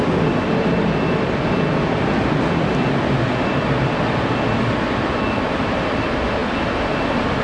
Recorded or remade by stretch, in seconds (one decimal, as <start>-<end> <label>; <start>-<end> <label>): 0.0-7.4 recorded